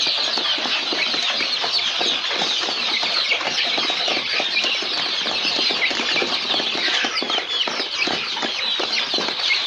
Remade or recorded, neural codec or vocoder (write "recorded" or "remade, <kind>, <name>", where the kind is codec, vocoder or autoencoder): recorded